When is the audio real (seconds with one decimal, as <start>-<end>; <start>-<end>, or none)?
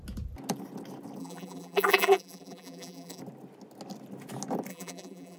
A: 0.0-1.2; 3.2-4.7